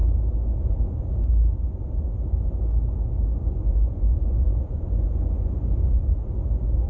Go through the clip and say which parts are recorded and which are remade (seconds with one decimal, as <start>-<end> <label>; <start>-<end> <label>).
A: 0.0-3.4 recorded; 3.4-6.0 remade; 6.0-6.9 recorded